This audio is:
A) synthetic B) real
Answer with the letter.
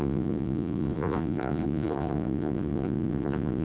A